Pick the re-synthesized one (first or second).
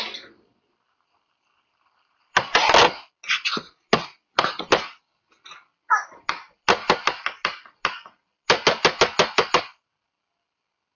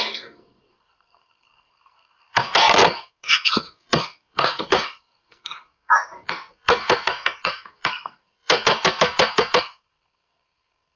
second